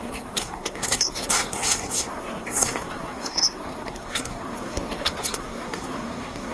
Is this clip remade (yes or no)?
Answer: yes